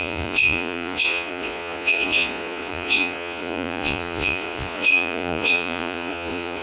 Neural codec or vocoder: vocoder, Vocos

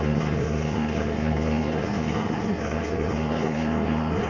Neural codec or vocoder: codec, SNAC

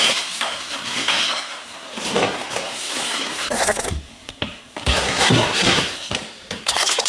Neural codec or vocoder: codec, SNAC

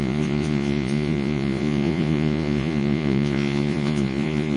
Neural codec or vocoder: vocoder, Vocos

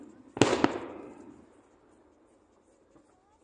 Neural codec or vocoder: none